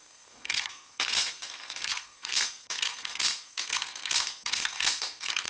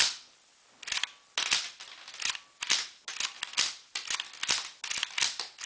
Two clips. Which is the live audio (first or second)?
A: second